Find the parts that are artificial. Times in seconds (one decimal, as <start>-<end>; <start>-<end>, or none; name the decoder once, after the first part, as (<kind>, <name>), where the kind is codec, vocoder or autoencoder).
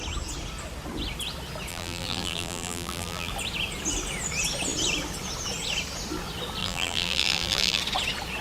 1.7-3.3 (vocoder, BigVGAN v2); 6.6-7.8